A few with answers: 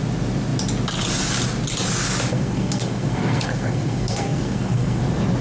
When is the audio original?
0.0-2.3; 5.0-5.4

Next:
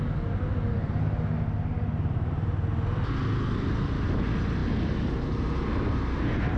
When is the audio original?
0.0-6.6

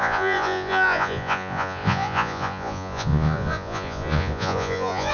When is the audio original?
none

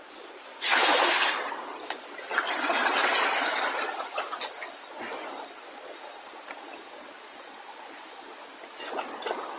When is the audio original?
0.0-9.6

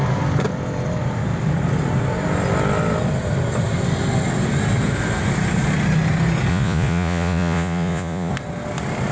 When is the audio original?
0.0-6.5; 8.3-9.1

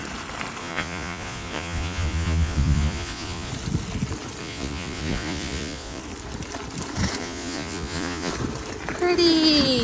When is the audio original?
0.0-0.6; 3.5-4.4; 6.0-7.2; 8.3-9.8

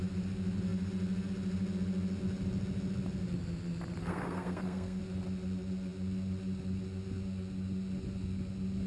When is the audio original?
0.0-4.0; 5.0-8.9

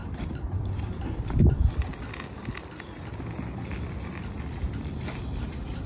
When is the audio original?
1.9-5.4